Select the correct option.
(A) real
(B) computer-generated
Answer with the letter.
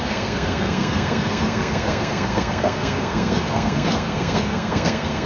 B